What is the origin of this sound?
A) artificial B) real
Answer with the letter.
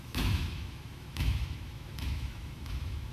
A